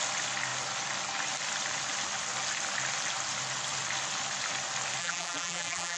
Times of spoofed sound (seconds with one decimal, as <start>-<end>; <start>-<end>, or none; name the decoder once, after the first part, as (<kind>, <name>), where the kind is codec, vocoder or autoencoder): 5.0-6.0 (vocoder, BigVGAN v2)